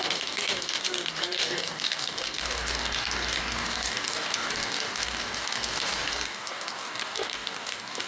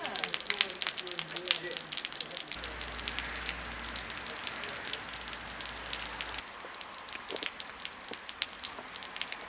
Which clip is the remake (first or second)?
first